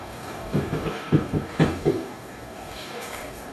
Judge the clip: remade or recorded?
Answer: remade